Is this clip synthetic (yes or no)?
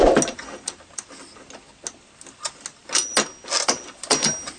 no